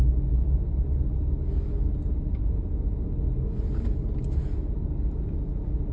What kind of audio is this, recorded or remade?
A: recorded